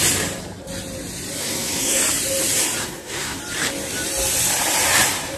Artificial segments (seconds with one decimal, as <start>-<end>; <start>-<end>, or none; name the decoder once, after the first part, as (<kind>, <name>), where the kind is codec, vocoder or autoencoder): 1.4-2.0 (codec, SNAC); 2.8-3.4